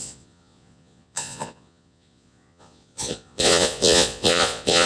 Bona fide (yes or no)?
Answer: no